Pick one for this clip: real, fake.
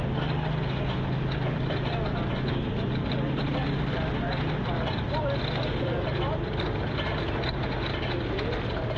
real